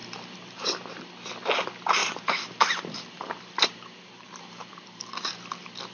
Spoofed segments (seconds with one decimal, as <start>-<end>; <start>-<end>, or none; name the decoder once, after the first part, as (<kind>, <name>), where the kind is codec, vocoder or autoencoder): 0.0-0.7 (vocoder, BigVGAN v2); 2.0-5.5